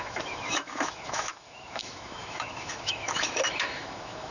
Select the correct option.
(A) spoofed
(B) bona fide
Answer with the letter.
A